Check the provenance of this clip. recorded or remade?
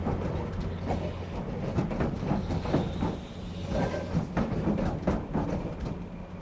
recorded